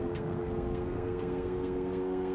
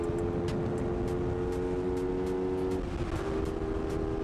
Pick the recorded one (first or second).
second